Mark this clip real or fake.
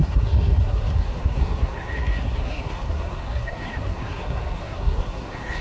fake